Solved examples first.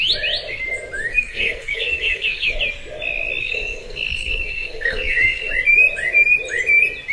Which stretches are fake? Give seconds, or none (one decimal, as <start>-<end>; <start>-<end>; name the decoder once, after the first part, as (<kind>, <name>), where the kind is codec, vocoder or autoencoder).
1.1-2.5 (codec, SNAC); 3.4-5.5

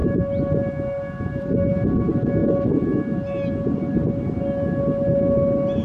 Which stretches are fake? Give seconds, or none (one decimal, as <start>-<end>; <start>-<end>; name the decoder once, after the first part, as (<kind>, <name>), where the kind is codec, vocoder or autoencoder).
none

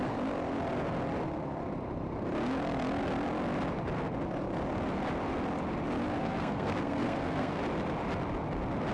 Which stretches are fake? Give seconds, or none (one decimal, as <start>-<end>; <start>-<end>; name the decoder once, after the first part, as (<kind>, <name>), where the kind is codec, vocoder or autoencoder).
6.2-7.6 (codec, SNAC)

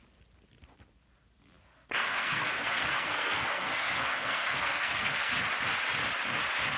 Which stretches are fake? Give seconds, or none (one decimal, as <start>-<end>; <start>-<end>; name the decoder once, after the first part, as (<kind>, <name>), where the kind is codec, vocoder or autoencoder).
1.7-5.3 (codec, SNAC)

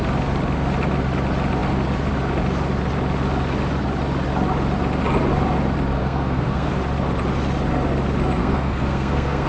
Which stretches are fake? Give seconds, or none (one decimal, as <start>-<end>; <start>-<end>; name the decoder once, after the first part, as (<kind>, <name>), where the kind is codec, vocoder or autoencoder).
6.0-6.7 (codec, SNAC); 8.4-9.5

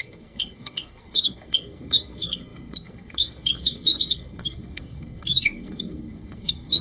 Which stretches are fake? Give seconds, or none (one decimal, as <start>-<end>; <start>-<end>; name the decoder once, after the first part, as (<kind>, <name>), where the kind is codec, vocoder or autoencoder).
0.0-6.8 (codec, SNAC)

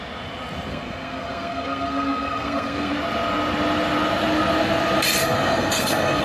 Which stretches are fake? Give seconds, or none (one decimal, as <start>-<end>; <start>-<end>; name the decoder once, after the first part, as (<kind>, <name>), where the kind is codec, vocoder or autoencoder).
0.7-2.9 (codec, SNAC); 5.2-6.2

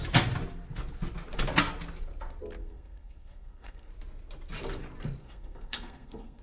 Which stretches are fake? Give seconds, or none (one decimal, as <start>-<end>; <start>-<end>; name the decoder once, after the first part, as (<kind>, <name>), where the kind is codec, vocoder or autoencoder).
2.6-3.9 (codec, SNAC); 5.2-6.4